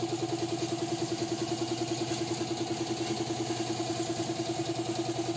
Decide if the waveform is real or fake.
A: real